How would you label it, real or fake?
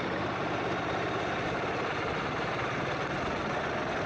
real